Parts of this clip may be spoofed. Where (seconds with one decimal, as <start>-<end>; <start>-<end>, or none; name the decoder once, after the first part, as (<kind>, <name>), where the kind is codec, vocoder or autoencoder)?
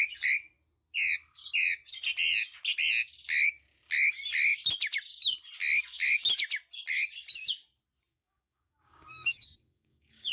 8.1-10.3 (codec, DAC)